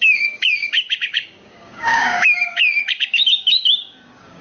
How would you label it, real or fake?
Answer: fake